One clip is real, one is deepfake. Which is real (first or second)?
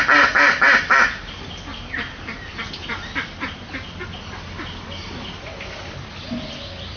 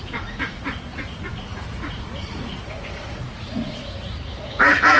first